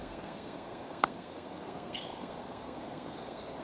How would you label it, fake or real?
fake